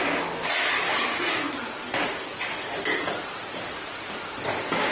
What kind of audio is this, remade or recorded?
recorded